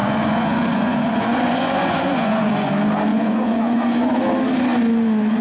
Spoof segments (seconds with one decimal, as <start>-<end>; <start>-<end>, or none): 0.0-2.7; 3.1-4.2